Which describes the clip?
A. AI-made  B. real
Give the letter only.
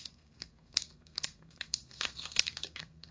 A